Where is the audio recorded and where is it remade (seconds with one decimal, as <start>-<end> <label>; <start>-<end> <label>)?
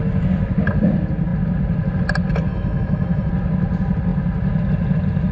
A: 0.0-2.5 recorded; 2.5-3.3 remade; 3.3-5.3 recorded